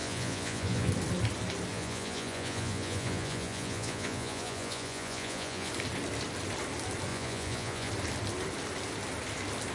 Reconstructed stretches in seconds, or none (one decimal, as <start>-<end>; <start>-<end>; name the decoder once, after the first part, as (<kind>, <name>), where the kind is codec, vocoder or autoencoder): 0.0-0.9 (vocoder, Vocos); 1.7-5.7; 7.1-7.9